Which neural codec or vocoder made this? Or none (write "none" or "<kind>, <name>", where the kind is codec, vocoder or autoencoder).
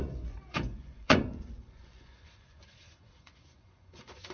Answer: vocoder, Vocos